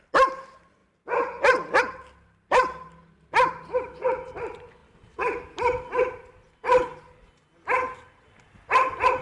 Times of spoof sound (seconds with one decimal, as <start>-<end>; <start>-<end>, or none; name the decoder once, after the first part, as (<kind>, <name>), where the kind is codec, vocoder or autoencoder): none